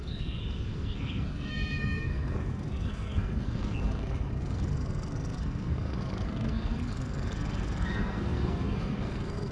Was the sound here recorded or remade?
remade